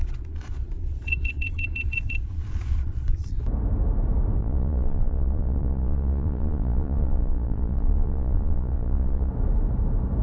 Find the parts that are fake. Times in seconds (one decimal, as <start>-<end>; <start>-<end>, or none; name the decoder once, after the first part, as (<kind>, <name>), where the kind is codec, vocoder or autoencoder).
0.0-3.4 (vocoder, Vocos); 4.4-9.3